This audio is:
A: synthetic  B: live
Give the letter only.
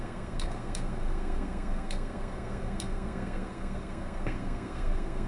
A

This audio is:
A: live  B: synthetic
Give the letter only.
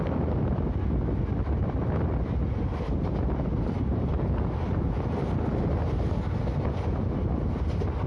A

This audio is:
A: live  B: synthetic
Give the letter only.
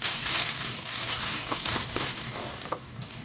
B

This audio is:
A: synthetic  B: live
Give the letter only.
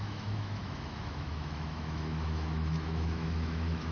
A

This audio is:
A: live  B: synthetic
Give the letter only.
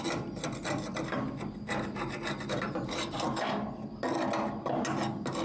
A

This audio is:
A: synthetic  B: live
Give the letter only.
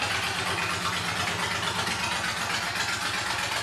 B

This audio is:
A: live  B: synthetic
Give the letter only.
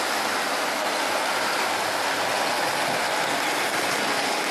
A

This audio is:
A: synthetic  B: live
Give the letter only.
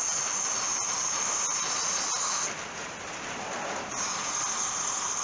B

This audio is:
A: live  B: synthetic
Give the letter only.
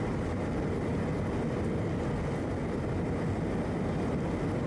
A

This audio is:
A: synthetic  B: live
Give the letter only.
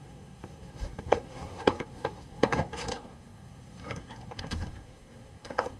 A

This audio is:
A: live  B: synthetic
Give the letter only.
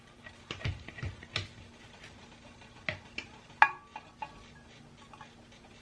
A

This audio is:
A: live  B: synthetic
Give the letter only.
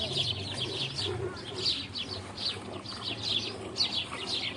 A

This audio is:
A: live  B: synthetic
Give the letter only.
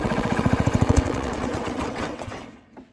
B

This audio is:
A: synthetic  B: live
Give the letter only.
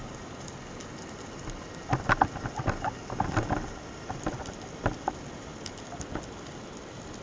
B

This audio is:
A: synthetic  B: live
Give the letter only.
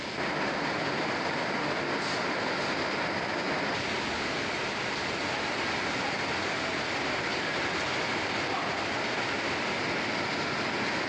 B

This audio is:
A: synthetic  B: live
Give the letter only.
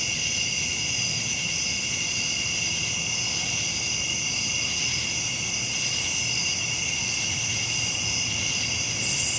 B